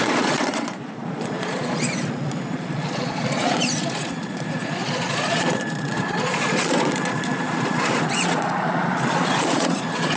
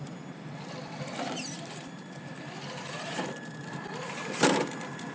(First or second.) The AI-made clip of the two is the first